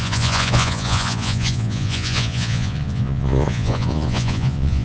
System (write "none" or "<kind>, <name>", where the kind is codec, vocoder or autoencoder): vocoder, Vocos